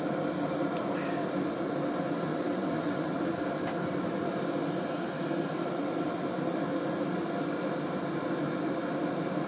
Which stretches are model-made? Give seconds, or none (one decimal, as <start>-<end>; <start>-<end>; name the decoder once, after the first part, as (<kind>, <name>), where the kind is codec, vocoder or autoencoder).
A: 2.3-3.2 (vocoder, WaveNeXt)